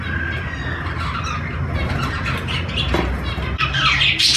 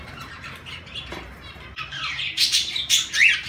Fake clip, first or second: second